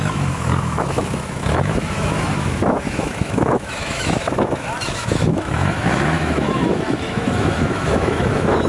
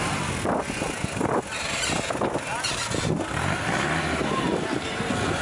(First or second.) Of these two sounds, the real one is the second